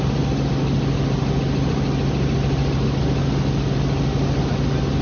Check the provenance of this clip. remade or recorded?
recorded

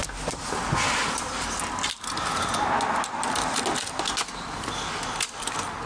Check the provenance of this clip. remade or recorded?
recorded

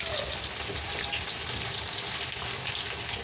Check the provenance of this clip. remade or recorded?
recorded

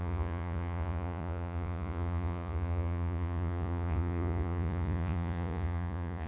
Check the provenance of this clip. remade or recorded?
remade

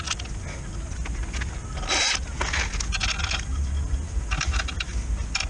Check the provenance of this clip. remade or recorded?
recorded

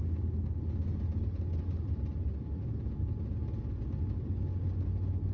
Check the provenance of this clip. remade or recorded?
recorded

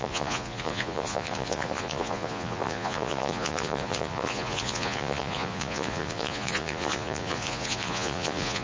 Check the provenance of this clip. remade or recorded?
remade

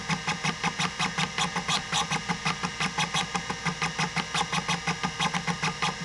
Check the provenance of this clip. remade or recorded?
recorded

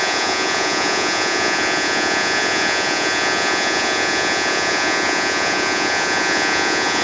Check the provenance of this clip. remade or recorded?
remade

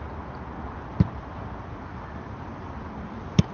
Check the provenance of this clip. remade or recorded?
recorded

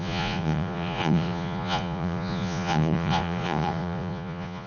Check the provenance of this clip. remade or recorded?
remade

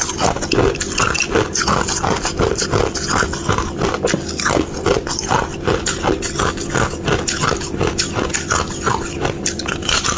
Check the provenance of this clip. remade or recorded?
recorded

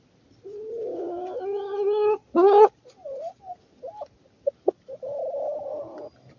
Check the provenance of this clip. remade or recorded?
recorded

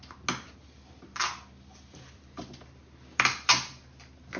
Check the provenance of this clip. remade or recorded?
recorded